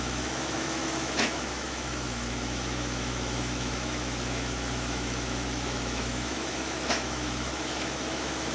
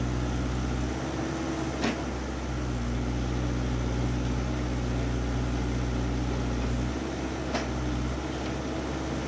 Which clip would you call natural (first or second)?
second